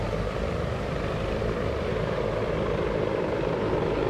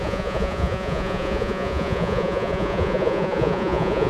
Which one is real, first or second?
first